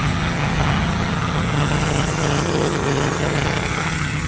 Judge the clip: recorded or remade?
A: remade